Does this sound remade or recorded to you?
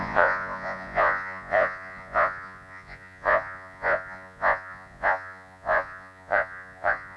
remade